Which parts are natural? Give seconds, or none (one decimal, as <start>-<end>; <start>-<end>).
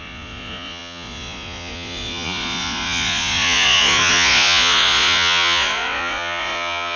none